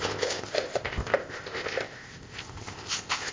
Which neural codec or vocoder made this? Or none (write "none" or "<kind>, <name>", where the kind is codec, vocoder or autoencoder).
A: codec, ZipCodec